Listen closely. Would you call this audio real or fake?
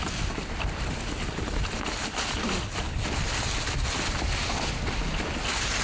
real